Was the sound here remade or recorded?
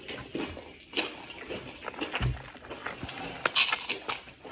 recorded